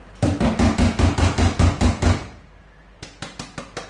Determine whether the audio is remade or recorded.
recorded